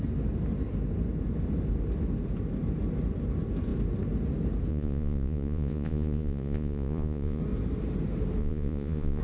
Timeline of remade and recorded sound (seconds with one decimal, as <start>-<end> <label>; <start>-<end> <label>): 0.0-4.7 recorded; 4.7-7.4 remade; 7.4-8.4 recorded; 8.4-9.2 remade

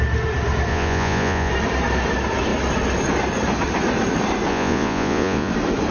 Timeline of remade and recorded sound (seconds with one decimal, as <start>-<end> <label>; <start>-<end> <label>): 0.0-0.7 recorded; 0.7-1.5 remade; 1.5-4.5 recorded; 4.5-5.5 remade; 5.5-5.9 recorded

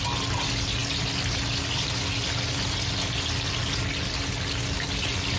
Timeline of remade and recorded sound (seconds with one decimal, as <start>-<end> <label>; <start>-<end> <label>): 0.0-5.4 recorded

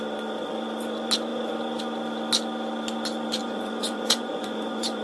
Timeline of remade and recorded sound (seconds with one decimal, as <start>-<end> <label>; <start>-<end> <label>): 0.0-3.4 recorded; 3.4-5.0 remade

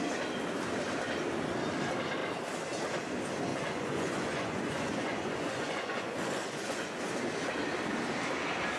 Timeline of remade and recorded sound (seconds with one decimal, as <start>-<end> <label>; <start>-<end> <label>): 0.0-3.5 recorded; 3.5-7.0 remade; 7.0-8.8 recorded

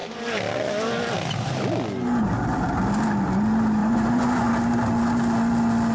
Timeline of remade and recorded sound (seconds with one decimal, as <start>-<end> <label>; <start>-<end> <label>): 0.0-3.8 recorded; 3.8-4.5 remade; 4.5-5.9 recorded

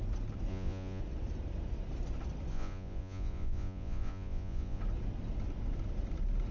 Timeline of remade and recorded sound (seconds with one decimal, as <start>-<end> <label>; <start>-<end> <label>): 0.0-0.5 recorded; 0.5-1.0 remade; 1.0-2.5 recorded; 2.5-4.8 remade; 4.8-6.5 recorded

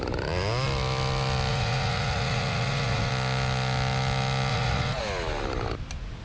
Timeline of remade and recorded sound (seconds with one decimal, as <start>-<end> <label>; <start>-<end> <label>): 0.0-1.5 recorded; 1.5-3.1 remade; 3.1-4.5 recorded; 4.5-5.0 remade; 5.0-6.2 recorded